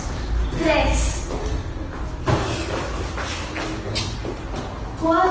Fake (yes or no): no